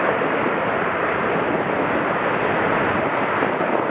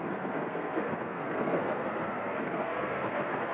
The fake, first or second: second